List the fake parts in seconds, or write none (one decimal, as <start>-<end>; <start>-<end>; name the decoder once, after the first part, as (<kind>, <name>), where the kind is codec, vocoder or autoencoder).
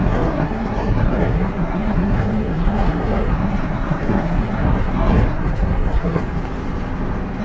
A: 0.0-6.2 (codec, SNAC)